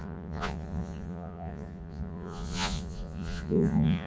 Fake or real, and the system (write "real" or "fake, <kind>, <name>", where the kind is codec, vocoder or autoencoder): fake, vocoder, Vocos